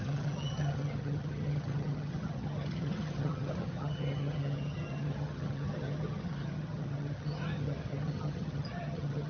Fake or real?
fake